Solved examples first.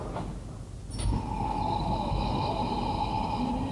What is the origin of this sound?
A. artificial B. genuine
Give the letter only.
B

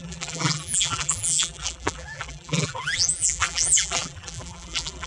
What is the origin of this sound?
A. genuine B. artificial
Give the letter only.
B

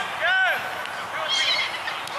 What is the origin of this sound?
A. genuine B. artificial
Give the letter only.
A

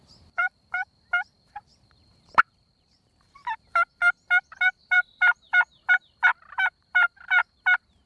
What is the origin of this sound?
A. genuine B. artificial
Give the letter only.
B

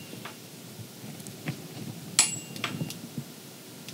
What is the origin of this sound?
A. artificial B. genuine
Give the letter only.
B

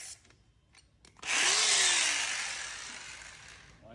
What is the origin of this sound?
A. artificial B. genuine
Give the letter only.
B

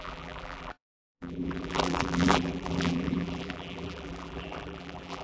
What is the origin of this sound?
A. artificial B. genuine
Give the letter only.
A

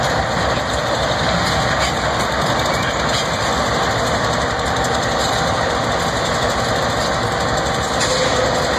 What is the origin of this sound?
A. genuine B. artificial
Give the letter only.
A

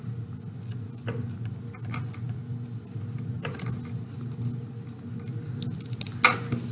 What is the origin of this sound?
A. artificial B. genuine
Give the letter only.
B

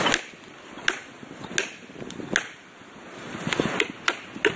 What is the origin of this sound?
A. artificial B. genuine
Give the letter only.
B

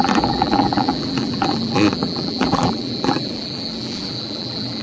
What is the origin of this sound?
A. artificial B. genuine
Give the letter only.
A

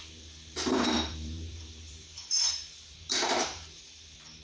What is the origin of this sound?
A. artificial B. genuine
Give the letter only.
A